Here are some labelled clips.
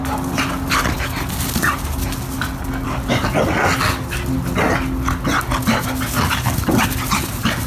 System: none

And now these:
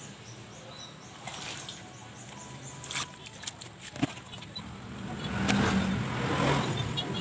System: none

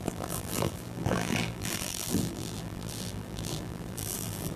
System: vocoder, BigVGAN v2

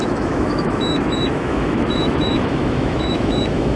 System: autoencoder, DAC-VAE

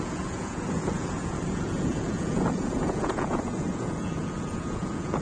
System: vocoder, Vocos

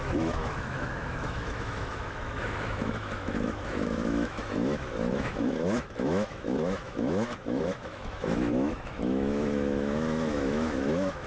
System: autoencoder, DAC-VAE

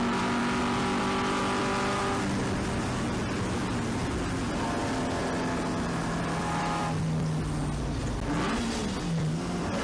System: none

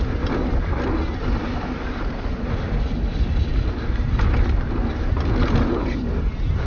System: none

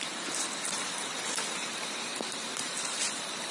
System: none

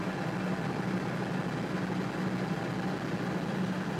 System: none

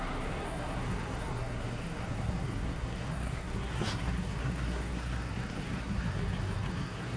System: codec, SNAC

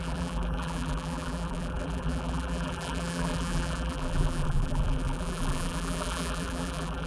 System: vocoder, BigVGAN v2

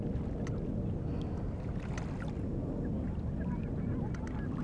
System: none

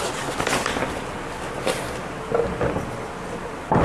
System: none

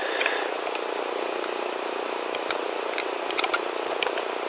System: none